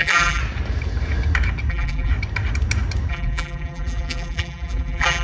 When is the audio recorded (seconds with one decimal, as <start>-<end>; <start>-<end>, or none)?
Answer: 0.4-1.7; 2.1-3.1